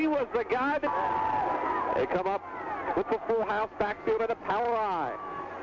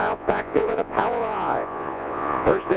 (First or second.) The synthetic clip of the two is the second